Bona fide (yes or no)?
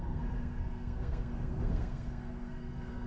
no